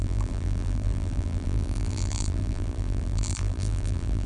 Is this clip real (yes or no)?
no